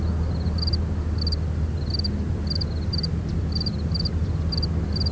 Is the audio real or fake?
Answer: real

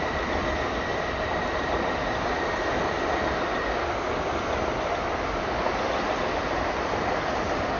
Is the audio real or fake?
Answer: real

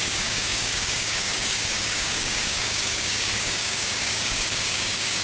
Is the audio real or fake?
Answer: fake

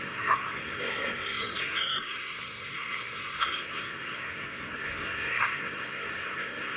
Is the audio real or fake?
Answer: fake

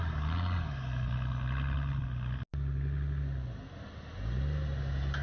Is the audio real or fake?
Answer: real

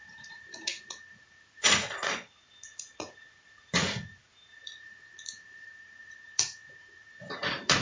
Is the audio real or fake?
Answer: fake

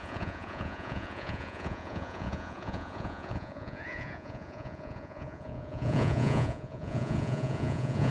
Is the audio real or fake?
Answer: fake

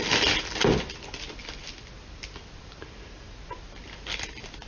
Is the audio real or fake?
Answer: real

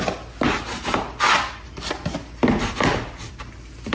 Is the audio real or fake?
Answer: real